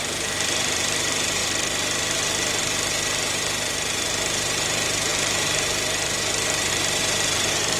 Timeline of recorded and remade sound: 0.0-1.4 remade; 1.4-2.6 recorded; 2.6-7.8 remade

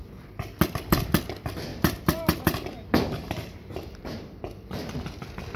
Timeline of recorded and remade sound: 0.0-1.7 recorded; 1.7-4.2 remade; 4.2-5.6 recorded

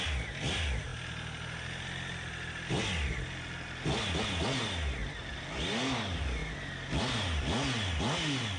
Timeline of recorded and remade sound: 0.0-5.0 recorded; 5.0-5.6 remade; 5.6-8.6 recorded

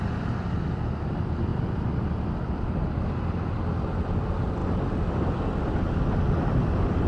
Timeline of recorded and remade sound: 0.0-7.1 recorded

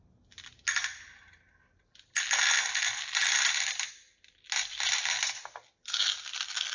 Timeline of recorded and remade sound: 0.0-6.7 recorded